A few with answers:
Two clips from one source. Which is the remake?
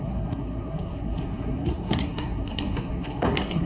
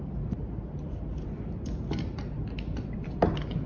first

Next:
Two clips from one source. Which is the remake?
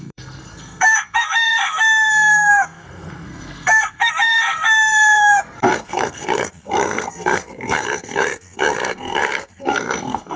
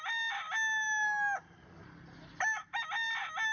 first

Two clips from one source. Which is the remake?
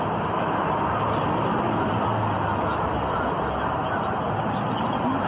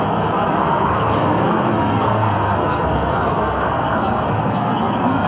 second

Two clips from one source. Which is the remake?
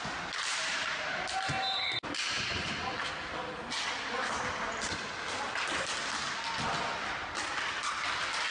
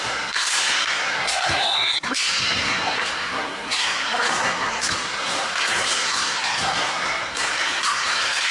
second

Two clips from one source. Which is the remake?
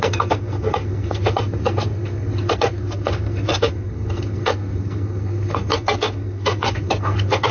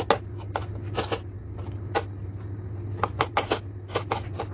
first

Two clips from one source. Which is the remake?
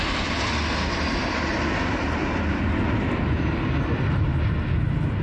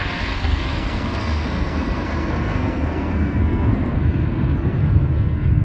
second